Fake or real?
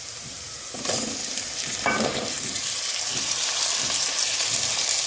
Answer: fake